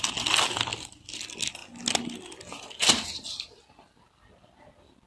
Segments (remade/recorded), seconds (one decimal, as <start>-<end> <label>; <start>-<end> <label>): 0.0-0.7 recorded; 0.7-1.2 remade; 1.2-5.1 recorded